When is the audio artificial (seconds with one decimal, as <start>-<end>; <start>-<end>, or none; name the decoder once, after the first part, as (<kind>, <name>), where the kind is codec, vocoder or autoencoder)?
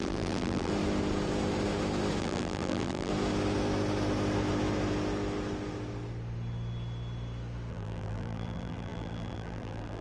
0.0-0.7 (vocoder, BigVGAN v2); 2.2-3.1; 7.7-10.0